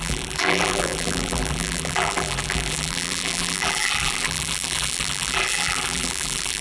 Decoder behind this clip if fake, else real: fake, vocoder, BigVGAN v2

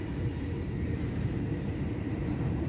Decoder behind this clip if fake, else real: fake, vocoder, BigVGAN v2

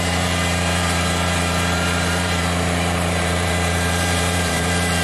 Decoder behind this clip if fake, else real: fake, vocoder, BigVGAN v2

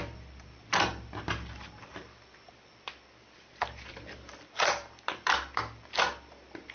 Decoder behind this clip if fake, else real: fake, vocoder, BigVGAN v2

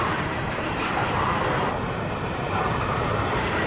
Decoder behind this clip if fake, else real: fake, vocoder, BigVGAN v2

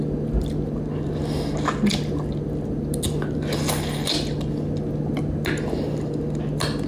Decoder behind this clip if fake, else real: real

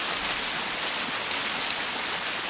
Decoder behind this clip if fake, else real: real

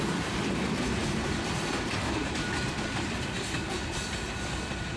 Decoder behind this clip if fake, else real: real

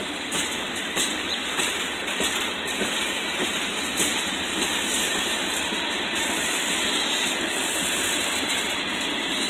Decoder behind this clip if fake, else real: fake, vocoder, BigVGAN v2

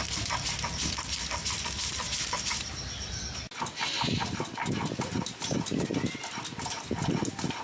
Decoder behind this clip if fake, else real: real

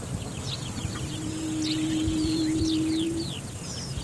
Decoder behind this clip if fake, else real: fake, vocoder, BigVGAN v2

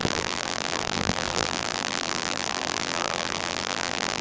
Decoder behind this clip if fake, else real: fake, vocoder, BigVGAN v2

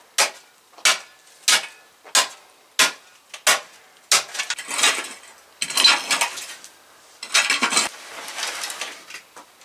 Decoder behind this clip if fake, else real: real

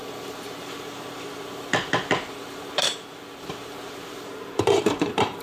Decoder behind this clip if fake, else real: fake, vocoder, BigVGAN v2